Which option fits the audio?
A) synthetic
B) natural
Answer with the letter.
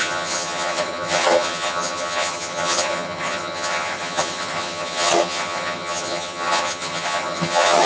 A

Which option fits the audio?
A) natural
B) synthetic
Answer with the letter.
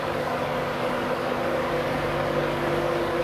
B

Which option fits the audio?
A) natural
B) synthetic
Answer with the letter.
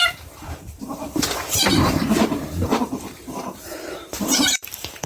B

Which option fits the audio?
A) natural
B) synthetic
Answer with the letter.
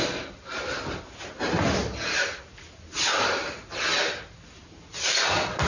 A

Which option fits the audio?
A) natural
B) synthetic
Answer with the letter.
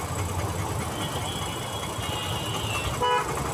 A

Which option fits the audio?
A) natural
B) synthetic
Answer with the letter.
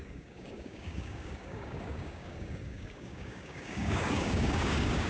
B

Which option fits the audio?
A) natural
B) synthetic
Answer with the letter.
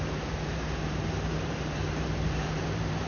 B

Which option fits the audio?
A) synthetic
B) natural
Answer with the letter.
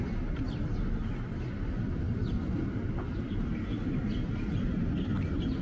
B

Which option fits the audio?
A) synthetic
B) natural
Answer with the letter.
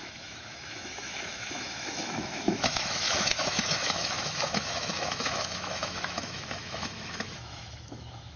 A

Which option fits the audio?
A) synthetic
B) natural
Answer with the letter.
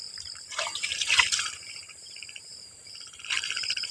A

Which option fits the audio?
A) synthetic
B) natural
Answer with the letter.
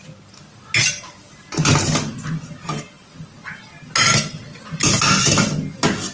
B